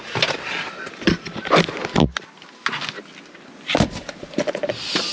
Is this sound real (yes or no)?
yes